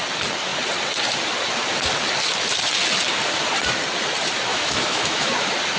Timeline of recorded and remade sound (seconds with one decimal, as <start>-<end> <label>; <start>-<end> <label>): 0.0-4.5 recorded; 4.5-5.3 remade; 5.3-5.8 recorded